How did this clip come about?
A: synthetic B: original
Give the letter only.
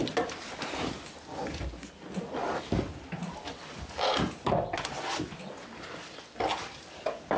B